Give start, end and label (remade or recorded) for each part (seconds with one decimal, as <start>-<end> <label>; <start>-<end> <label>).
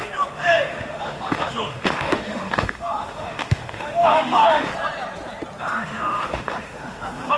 0.0-4.7 remade; 4.7-5.6 recorded; 5.6-7.4 remade